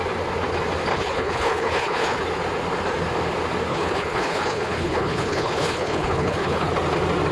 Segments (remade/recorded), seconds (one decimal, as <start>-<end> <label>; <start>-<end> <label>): 0.0-0.9 recorded; 0.9-2.2 remade; 2.2-3.7 recorded; 3.7-6.7 remade; 6.7-7.3 recorded

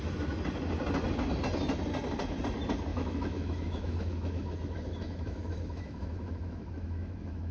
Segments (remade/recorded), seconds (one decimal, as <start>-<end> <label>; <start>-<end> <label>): 0.0-2.9 recorded; 2.9-7.5 remade

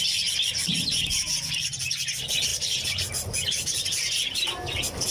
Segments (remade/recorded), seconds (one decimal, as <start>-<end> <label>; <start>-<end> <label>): 0.0-2.5 recorded; 2.5-3.1 remade; 3.1-5.1 recorded